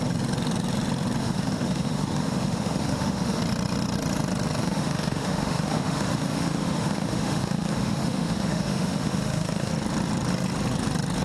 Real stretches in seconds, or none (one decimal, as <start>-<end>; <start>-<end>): 0.0-1.2; 3.4-4.6; 9.7-11.2